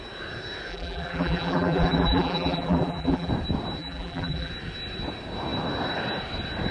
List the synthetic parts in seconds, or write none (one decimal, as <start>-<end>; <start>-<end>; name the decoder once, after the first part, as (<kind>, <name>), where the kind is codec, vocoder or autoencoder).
0.7-3.3 (vocoder, BigVGAN v2); 3.8-4.5

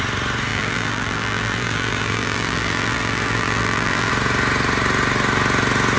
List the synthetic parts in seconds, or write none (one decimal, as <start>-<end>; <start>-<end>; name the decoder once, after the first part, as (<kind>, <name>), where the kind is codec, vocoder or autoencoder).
0.5-4.1 (vocoder, BigVGAN v2)

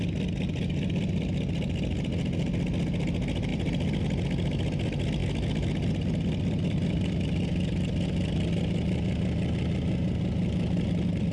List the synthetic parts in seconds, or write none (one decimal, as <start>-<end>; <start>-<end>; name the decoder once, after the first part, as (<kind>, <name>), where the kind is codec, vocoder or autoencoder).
3.5-4.0 (vocoder, BigVGAN v2)

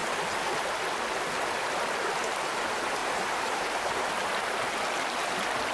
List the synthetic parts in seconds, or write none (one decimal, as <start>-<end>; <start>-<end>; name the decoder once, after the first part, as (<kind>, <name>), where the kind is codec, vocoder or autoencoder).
3.0-4.1 (vocoder, BigVGAN v2)